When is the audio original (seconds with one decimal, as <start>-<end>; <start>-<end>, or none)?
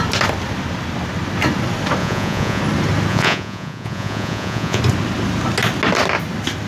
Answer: 0.0-2.0; 2.6-3.1; 4.8-6.7